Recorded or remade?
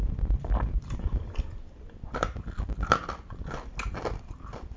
remade